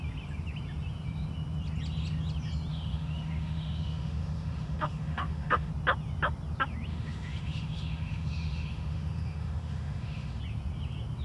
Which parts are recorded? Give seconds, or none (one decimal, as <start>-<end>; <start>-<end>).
0.0-2.7; 5.7-6.9; 10.4-11.2